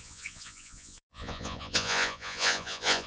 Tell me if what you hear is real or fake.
fake